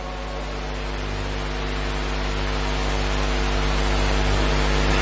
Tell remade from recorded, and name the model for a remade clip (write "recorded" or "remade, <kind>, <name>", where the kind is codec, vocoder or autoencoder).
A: recorded